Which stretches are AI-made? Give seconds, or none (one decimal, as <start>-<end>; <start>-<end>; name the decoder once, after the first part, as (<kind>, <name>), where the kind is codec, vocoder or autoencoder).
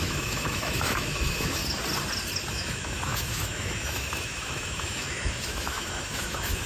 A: 0.0-1.6 (autoencoder, DAC-VAE); 2.5-6.7